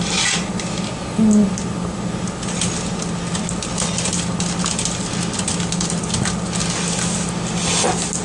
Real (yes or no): yes